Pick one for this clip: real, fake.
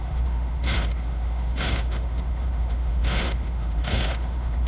fake